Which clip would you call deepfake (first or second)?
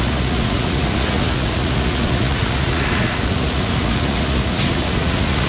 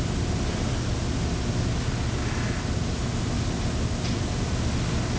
first